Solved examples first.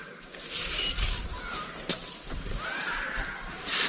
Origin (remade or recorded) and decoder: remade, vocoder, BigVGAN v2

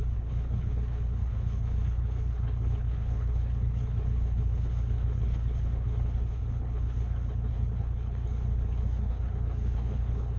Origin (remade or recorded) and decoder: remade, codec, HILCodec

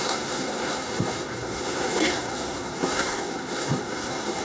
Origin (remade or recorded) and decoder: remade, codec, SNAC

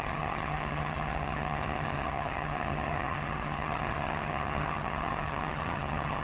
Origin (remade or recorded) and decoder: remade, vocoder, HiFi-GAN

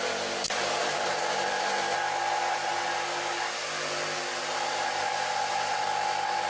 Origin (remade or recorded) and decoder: recorded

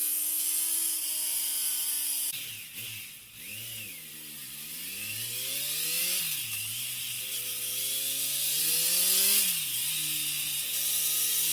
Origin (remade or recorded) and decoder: recorded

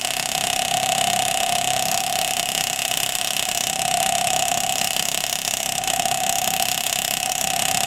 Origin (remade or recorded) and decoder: remade, autoencoder, DAC-VAE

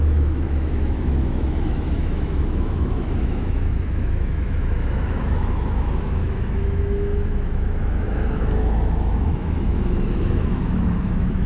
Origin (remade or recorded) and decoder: remade, autoencoder, DAC-VAE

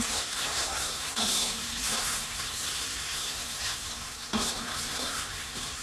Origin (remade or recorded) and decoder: remade, codec, SNAC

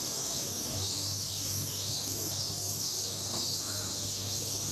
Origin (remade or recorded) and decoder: remade, codec, DAC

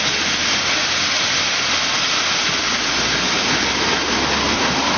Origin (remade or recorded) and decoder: recorded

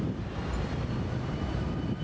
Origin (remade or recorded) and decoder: remade, vocoder, BigVGAN v2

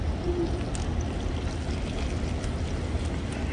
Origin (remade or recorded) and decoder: remade, vocoder, BigVGAN v2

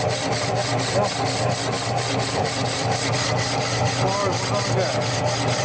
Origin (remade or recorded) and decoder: recorded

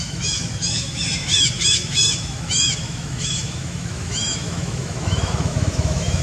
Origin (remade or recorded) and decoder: remade, autoencoder, DAC-VAE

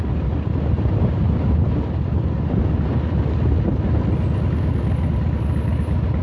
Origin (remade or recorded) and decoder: recorded